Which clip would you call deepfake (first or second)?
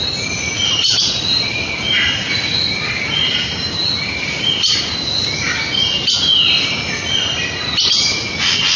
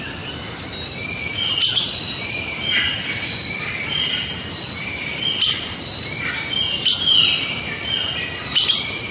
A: second